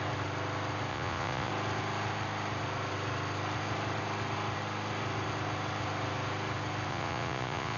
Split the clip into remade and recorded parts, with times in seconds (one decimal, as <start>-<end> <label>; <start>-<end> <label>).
0.0-0.9 recorded; 0.9-1.5 remade; 1.5-6.9 recorded; 6.9-7.8 remade

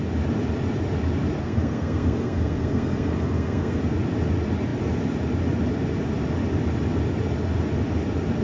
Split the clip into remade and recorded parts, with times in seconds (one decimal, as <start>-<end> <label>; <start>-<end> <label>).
0.0-1.4 recorded; 1.4-3.8 remade; 3.8-8.4 recorded

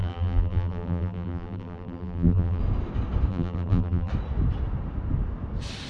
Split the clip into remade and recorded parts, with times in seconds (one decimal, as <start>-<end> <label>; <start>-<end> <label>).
0.0-2.6 remade; 2.6-3.3 recorded; 3.3-4.1 remade; 4.1-5.9 recorded

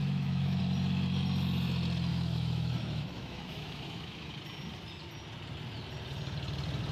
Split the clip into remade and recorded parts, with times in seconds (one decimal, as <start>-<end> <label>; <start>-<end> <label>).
0.0-0.6 remade; 0.6-2.1 recorded; 2.1-4.3 remade; 4.3-6.9 recorded